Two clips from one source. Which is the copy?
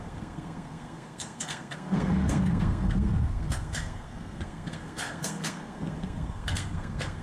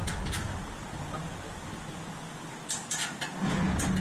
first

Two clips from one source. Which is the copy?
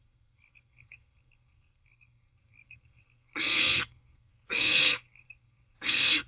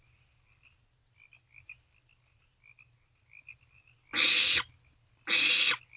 first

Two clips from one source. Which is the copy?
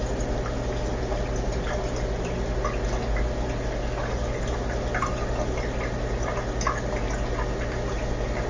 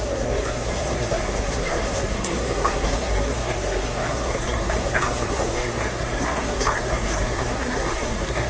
second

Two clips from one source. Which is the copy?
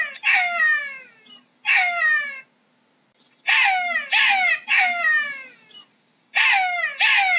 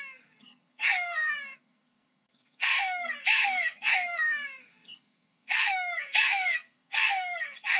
second